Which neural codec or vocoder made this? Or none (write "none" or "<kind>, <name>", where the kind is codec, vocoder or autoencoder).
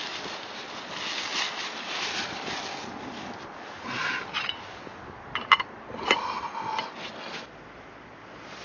none